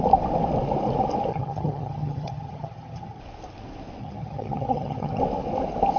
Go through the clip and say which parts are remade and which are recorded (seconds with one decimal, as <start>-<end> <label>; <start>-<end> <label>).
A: 0.0-1.3 recorded; 1.3-3.2 remade; 3.2-4.0 recorded; 4.0-5.2 remade; 5.2-6.0 recorded